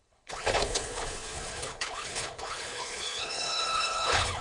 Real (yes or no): no